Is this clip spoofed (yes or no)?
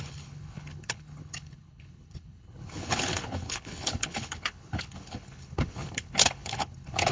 yes